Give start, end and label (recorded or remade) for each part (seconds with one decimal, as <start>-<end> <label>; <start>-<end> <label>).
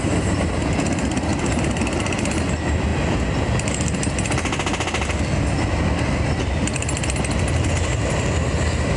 0.0-9.0 recorded